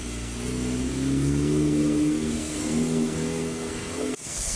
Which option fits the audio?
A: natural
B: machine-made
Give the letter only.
B